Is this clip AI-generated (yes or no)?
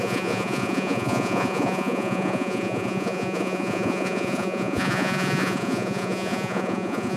yes